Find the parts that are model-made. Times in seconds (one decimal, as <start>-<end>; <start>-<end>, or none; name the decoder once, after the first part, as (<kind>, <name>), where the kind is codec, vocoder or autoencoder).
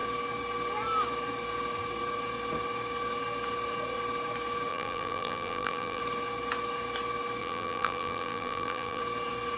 4.7-6.0 (vocoder, BigVGAN v2); 7.4-9.0